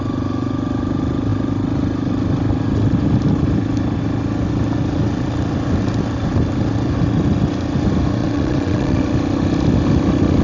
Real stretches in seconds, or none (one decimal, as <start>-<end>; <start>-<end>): 0.0-8.2; 9.0-10.4